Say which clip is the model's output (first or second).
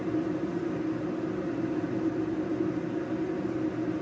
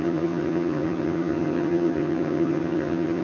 second